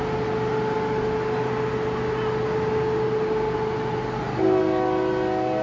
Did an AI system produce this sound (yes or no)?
no